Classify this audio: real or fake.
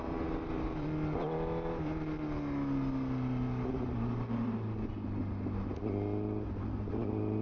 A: real